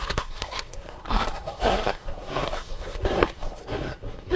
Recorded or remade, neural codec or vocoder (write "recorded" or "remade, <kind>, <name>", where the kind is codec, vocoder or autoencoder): remade, codec, SNAC